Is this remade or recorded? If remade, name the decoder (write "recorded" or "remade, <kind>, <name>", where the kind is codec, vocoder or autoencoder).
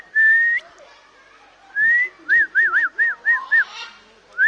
recorded